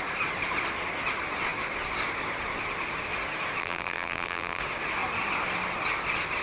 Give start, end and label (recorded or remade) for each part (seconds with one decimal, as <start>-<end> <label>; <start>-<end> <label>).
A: 0.0-3.6 recorded; 3.6-4.6 remade; 4.6-6.4 recorded